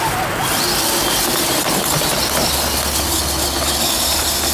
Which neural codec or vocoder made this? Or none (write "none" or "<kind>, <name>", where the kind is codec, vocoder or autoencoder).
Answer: none